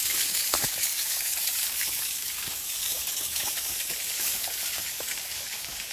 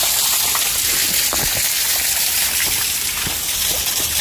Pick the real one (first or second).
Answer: second